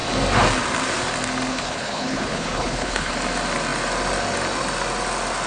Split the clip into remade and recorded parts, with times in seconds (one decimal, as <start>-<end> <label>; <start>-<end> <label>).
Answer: 0.0-1.5 recorded; 1.5-3.1 remade; 3.1-5.5 recorded